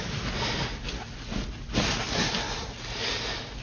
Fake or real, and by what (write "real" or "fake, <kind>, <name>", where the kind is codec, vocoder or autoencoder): real